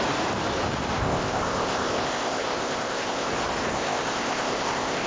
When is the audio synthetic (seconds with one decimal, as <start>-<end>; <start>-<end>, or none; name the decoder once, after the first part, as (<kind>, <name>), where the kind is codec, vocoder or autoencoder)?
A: 1.0-3.3 (codec, ZipCodec); 3.7-5.1